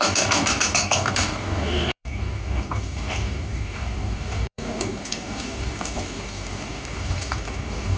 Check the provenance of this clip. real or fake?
fake